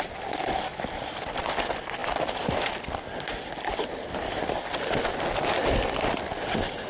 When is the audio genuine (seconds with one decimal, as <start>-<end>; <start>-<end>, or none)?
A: 0.0-6.9